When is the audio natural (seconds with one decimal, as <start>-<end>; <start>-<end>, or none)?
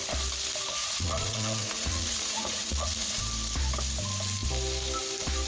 0.0-0.8; 3.2-5.5